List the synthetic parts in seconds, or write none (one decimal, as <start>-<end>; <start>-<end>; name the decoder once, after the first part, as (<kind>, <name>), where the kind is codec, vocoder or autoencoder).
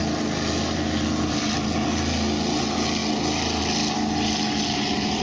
none